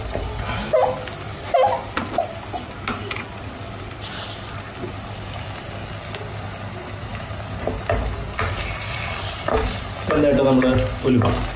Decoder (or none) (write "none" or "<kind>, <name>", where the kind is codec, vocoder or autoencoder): none